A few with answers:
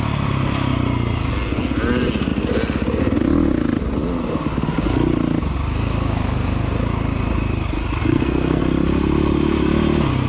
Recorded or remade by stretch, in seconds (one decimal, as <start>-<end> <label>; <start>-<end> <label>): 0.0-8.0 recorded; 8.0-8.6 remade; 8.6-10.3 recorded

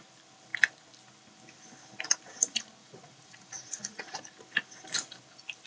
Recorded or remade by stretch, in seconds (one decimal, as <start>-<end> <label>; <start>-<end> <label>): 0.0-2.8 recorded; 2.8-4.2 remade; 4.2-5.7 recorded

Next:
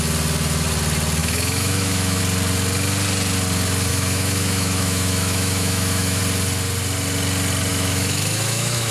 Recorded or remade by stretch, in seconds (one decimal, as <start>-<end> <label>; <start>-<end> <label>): 0.0-1.2 recorded; 1.2-2.2 remade; 2.2-3.9 recorded; 3.9-6.2 remade; 6.2-7.7 recorded; 7.7-8.9 remade

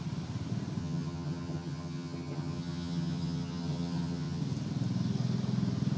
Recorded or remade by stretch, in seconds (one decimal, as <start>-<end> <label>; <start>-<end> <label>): 0.0-0.8 recorded; 0.8-4.4 remade; 4.4-6.0 recorded

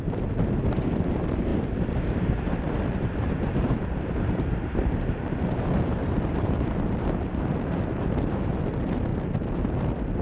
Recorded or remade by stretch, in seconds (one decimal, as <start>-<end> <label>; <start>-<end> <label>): 0.0-9.1 remade; 9.1-10.2 recorded

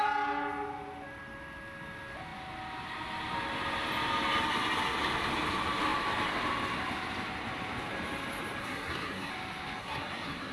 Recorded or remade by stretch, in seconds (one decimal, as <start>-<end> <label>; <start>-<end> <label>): 0.0-8.6 recorded; 8.6-9.3 remade; 9.3-9.8 recorded; 9.8-10.5 remade

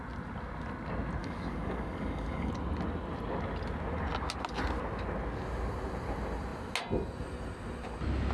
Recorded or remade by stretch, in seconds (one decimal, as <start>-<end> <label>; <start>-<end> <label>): 0.0-1.2 recorded; 1.2-2.5 remade; 2.5-8.3 recorded